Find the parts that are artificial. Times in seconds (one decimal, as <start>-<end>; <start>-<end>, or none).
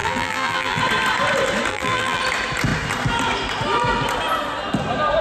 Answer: 0.0-0.8; 1.7-2.2